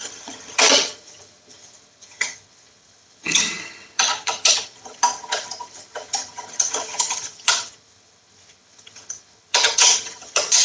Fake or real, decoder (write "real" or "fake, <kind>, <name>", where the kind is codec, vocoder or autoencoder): fake, vocoder, HiFi-GAN